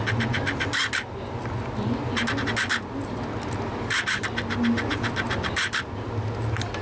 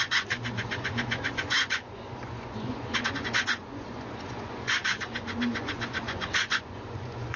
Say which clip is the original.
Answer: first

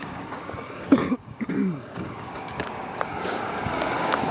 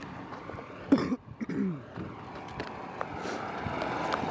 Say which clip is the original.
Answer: second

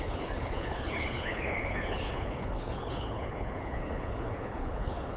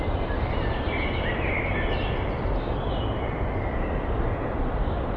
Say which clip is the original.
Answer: second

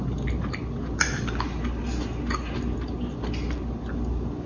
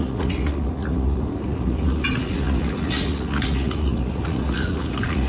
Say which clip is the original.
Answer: first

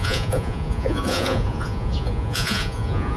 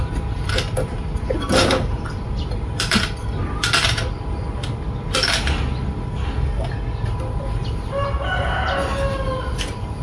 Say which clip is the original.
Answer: second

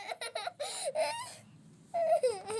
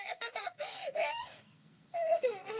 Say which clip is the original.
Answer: first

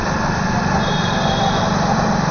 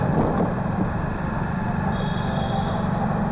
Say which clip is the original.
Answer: second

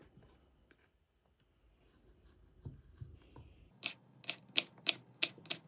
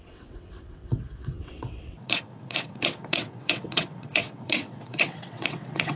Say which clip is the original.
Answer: first